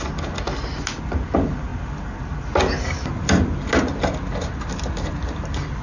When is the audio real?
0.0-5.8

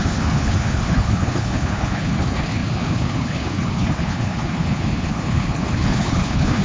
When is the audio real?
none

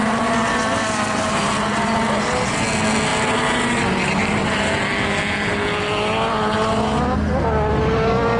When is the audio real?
0.0-8.4

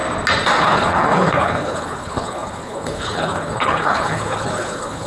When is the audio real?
0.0-0.6

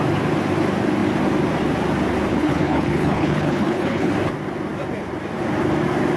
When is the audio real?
0.0-2.3; 4.1-6.2

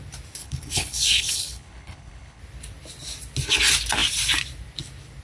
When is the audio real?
0.0-0.4; 2.4-5.2